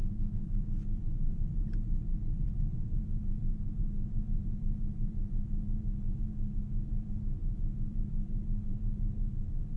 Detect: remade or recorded remade